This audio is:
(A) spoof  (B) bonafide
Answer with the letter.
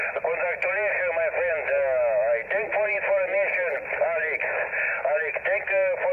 B